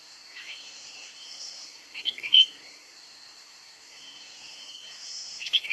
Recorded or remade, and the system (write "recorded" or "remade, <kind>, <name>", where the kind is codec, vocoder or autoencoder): remade, codec, SNAC